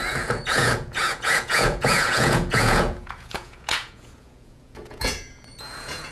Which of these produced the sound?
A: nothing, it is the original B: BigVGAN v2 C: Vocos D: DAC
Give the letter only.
C